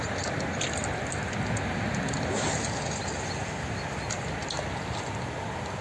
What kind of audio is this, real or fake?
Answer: real